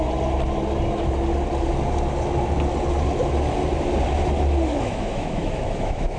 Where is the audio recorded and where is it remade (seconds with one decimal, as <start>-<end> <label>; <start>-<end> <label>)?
0.0-4.7 recorded; 4.7-6.2 remade